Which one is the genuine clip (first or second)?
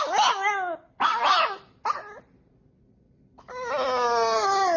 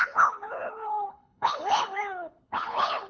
first